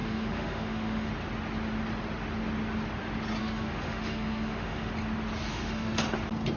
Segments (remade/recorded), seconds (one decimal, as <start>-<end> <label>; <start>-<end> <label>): 0.0-1.1 remade; 1.1-3.4 recorded; 3.4-4.9 remade; 4.9-5.5 recorded; 5.5-6.0 remade; 6.0-6.6 recorded